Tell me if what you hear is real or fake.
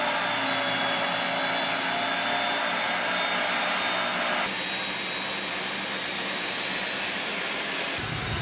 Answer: real